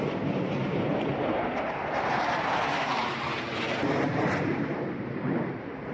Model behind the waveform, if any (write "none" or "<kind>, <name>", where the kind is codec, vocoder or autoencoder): vocoder, BigVGAN v2